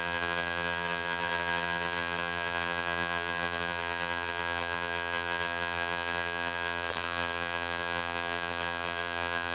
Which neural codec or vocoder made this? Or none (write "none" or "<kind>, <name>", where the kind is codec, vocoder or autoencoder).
vocoder, BigVGAN v2